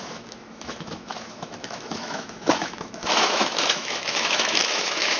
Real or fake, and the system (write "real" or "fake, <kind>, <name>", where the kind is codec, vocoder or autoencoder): fake, autoencoder, DAC-VAE